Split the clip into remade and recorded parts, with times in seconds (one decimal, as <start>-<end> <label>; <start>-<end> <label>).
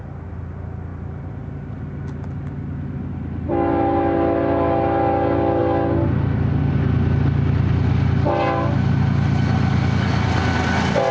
0.0-11.1 recorded